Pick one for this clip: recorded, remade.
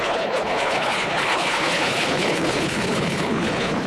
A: remade